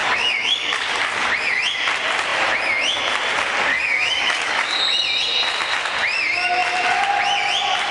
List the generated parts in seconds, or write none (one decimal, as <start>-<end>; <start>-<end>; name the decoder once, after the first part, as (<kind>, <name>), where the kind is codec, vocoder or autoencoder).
0.0-1.3 (codec, DAC); 3.7-4.8